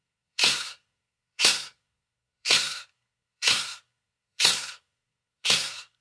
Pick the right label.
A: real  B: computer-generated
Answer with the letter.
B